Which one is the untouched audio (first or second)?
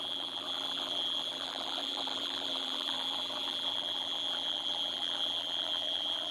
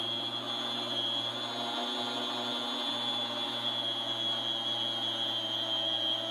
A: second